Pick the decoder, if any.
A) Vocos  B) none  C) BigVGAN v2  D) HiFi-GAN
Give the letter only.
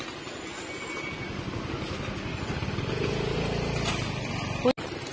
B